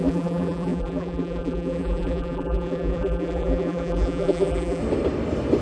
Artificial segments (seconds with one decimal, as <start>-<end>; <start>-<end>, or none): 0.0-4.8